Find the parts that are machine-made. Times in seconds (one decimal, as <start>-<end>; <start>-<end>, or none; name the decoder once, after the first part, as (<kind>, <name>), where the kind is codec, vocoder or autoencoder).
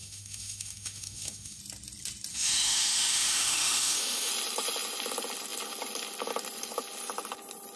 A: 0.0-1.6 (autoencoder, DAC-VAE); 2.3-4.3